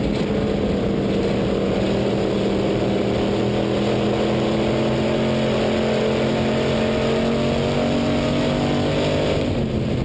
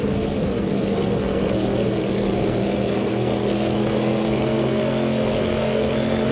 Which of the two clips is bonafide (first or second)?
first